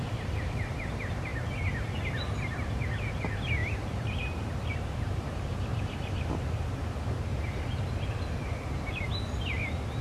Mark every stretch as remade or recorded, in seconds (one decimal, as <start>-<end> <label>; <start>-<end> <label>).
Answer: 0.0-3.6 recorded; 3.6-6.3 remade; 6.3-7.3 recorded; 7.3-7.9 remade; 7.9-10.0 recorded